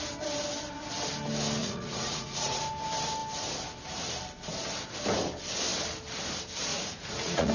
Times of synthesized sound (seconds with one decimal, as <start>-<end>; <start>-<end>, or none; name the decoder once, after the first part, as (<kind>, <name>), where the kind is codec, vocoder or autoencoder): 1.6-2.6 (vocoder, Vocos); 6.7-7.5